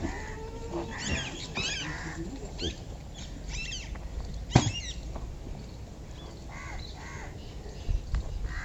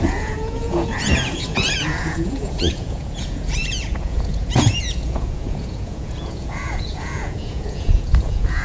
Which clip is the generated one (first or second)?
second